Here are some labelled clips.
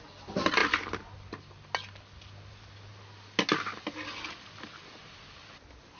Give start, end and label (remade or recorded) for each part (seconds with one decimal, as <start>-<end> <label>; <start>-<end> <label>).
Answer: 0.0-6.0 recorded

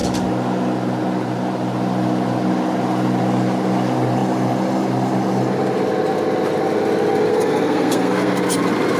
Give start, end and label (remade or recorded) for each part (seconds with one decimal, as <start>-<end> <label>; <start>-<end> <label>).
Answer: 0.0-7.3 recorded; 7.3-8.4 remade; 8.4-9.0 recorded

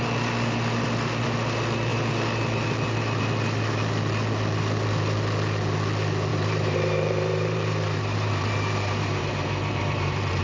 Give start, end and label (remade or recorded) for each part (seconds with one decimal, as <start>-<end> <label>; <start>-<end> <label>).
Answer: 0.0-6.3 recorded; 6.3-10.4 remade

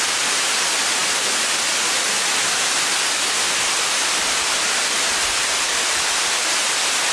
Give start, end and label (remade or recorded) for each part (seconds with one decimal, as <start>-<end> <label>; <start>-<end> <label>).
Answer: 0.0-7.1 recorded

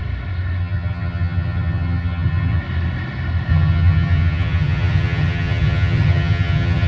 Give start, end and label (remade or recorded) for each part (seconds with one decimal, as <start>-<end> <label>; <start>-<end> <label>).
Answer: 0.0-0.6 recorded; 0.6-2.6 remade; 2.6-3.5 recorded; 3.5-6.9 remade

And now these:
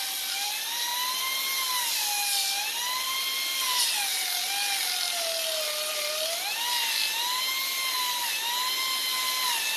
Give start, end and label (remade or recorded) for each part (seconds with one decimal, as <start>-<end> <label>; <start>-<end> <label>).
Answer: 0.0-9.8 recorded

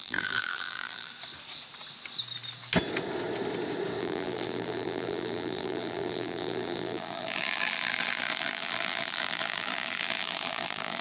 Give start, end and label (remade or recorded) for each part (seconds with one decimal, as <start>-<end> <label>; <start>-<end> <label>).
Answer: 0.0-1.1 remade; 1.1-4.0 recorded; 4.0-11.0 remade

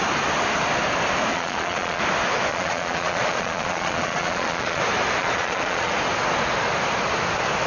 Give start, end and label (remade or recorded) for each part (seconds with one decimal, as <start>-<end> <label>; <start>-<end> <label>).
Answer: 0.0-1.3 recorded; 1.3-2.0 remade; 2.0-2.5 recorded; 2.5-4.8 remade; 4.8-5.2 recorded; 5.2-5.9 remade; 5.9-7.7 recorded